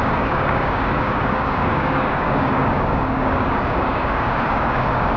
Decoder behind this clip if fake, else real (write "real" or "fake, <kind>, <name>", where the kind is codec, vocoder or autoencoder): fake, codec, DAC